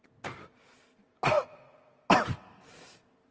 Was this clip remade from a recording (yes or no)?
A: no